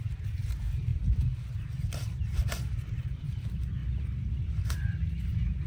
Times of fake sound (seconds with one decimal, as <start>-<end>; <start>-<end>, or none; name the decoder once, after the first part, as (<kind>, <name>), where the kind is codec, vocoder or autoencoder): 0.0-0.9 (vocoder, BigVGAN v2); 3.0-3.8; 5.3-5.7